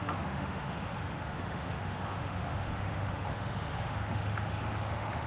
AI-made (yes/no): yes